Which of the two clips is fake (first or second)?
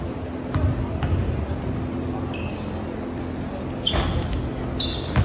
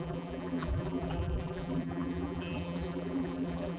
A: second